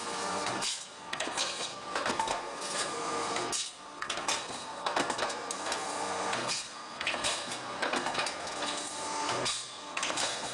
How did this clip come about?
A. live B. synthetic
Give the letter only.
B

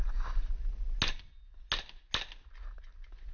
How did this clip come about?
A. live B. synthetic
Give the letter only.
A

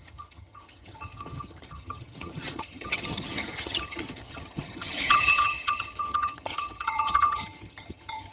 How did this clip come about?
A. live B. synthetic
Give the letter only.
B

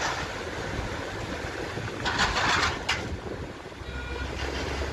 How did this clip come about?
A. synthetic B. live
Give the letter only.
B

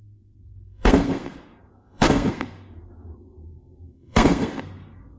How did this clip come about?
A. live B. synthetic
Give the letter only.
B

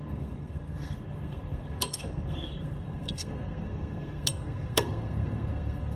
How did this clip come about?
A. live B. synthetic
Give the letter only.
B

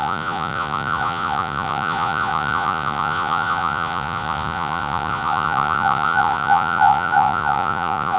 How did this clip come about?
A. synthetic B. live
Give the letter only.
A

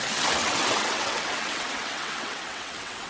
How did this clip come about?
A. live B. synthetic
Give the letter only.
B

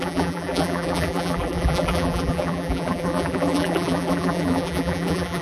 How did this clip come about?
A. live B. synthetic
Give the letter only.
B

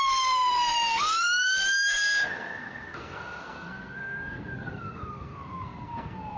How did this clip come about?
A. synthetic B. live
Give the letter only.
A